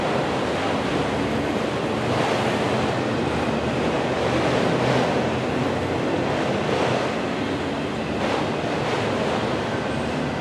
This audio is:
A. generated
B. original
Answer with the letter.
B